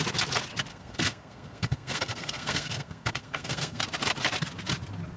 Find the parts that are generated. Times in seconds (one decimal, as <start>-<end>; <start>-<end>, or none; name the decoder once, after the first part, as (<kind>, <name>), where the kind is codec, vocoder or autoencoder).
0.7-3.8 (codec, SNAC)